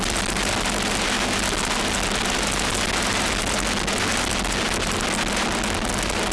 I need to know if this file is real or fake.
real